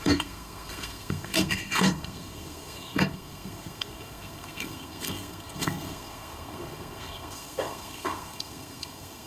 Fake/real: fake